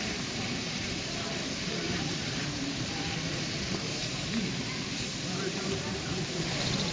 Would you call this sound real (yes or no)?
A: no